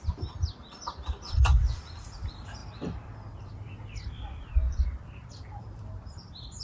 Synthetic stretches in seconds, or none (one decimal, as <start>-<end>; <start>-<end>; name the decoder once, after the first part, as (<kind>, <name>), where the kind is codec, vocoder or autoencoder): 0.0-6.6 (vocoder, BigVGAN v2)